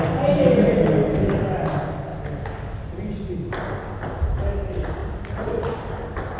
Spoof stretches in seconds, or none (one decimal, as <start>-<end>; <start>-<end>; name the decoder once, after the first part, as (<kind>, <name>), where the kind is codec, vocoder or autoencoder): none

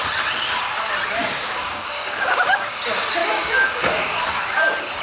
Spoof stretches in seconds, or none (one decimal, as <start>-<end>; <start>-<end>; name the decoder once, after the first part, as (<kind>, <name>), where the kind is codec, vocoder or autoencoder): 1.2-2.8 (codec, DAC); 3.2-4.2

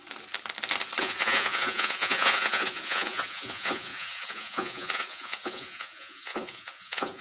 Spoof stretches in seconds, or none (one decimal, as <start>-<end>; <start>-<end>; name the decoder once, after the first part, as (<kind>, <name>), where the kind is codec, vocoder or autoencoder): 1.0-7.2 (vocoder, Vocos)

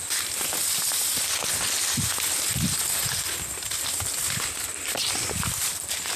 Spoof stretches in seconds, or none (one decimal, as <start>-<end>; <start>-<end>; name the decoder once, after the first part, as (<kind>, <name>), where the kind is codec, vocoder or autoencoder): none

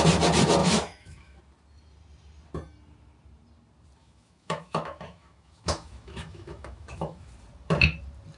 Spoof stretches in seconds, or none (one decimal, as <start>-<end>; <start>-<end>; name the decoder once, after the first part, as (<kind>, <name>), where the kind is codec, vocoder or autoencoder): 0.6-1.4 (autoencoder, DAC-VAE); 4.0-7.3